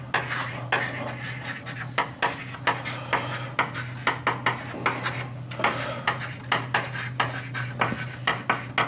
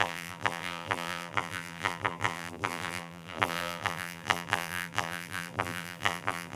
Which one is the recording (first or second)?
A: first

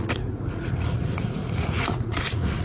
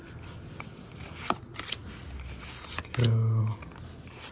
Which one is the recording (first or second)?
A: second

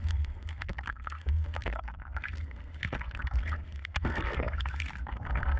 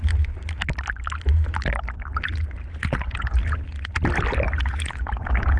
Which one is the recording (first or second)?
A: second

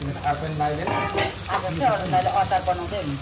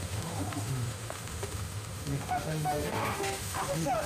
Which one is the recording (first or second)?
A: first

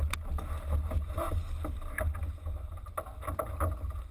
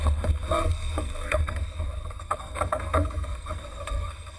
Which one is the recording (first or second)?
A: first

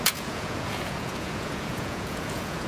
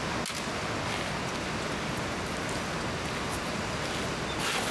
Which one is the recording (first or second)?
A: second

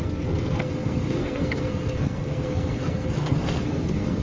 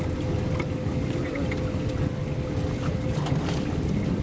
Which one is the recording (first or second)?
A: second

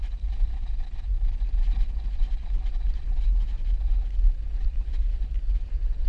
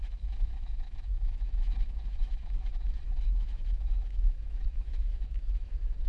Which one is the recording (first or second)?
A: first